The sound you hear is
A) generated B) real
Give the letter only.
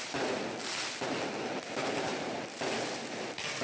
B